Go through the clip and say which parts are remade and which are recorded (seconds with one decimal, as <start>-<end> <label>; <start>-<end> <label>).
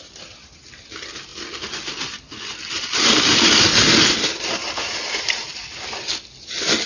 0.0-6.9 recorded